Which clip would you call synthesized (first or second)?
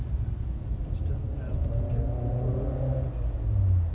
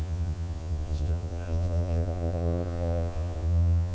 second